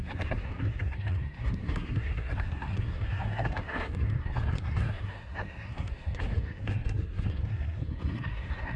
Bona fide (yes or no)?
no